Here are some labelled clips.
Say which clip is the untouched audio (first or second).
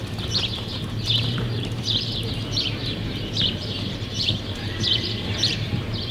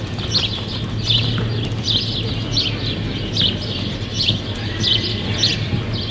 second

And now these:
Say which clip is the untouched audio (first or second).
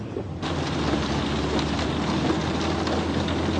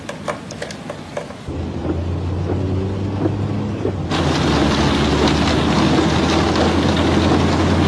second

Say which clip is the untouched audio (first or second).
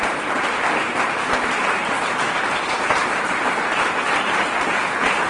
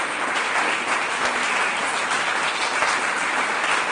second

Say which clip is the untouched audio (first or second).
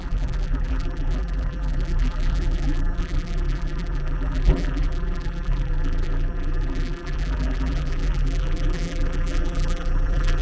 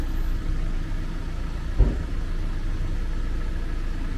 second